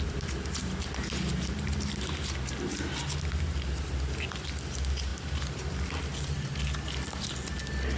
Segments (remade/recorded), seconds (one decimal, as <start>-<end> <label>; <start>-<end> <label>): 0.0-8.0 recorded